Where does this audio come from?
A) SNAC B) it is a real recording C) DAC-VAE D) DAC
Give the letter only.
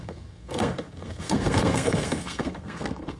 A